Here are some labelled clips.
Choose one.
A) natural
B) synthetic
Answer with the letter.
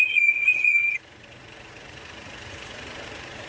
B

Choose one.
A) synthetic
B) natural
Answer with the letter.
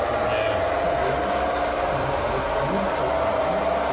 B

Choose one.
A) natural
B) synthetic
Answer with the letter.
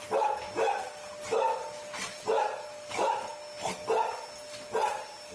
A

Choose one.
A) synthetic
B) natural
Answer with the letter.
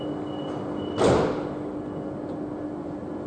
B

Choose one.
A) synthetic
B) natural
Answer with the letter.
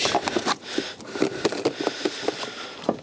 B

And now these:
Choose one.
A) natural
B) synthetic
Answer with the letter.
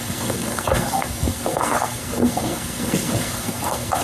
B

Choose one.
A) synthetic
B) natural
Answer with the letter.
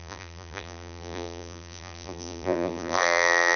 A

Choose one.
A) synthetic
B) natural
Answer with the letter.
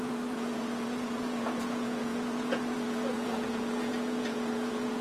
A